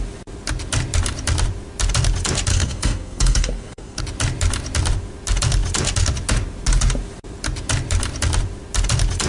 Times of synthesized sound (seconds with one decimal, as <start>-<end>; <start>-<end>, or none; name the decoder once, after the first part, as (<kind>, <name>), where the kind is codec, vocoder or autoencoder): 2.5-4.0 (codec, SNAC)